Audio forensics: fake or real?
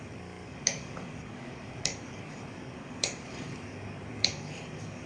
fake